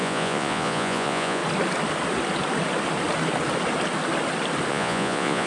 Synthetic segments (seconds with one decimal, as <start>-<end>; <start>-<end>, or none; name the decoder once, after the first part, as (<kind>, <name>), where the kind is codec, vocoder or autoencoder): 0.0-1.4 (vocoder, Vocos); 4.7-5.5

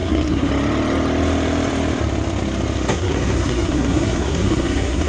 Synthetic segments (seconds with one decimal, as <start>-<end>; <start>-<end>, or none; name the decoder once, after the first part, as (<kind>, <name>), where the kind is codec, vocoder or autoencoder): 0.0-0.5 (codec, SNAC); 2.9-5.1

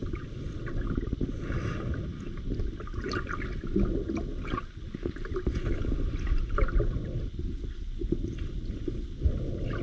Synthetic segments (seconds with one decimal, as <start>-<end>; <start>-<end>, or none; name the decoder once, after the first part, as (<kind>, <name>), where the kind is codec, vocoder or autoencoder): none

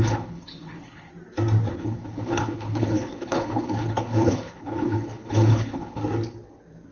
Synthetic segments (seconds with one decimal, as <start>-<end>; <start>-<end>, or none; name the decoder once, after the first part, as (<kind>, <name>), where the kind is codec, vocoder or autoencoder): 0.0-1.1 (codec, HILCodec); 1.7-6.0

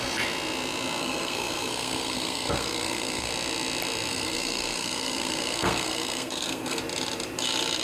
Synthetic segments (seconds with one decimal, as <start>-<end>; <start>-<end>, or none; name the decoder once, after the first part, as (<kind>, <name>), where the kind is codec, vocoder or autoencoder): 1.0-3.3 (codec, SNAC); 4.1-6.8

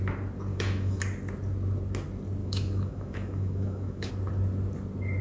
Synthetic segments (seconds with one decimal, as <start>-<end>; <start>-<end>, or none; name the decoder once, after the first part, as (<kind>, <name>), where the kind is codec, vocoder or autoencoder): 0.5-1.0 (autoencoder, DAC-VAE); 2.4-4.1